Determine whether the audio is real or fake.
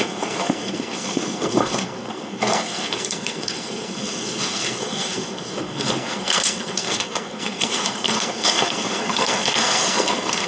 fake